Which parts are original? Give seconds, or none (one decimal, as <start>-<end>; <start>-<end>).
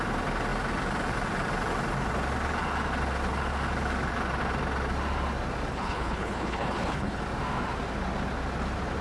0.0-5.7; 7.2-9.0